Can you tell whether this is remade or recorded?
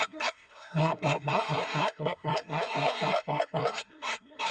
remade